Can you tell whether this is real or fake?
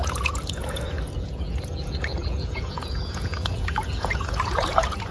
fake